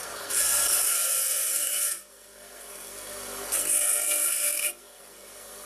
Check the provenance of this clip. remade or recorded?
remade